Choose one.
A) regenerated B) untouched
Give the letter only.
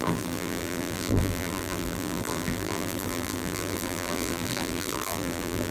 A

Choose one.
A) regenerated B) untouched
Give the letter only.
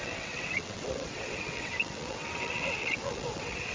A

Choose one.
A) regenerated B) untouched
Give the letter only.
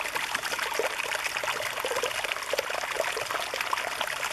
B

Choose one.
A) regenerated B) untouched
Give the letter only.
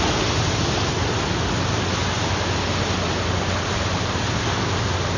B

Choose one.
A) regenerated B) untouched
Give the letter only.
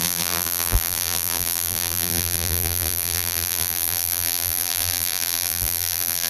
A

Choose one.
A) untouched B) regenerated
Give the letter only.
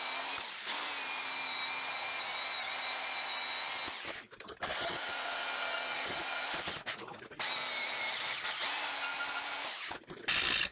A